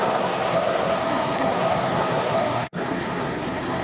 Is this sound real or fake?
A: fake